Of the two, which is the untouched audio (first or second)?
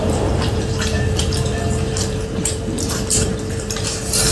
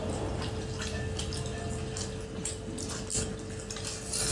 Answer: second